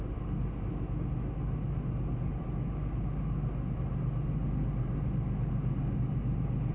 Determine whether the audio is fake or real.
real